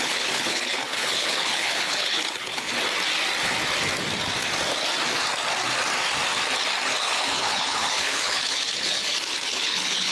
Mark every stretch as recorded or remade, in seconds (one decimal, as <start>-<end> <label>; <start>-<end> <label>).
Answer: 0.0-2.7 remade; 2.7-7.0 recorded; 7.0-10.1 remade